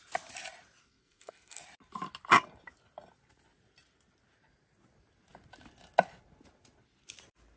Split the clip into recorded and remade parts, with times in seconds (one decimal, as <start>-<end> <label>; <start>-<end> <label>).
0.0-0.8 recorded; 0.8-1.6 remade; 1.6-7.6 recorded